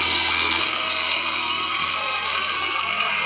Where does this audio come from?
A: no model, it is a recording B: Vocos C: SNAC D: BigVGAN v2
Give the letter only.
C